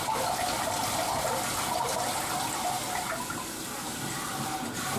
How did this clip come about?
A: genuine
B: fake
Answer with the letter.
A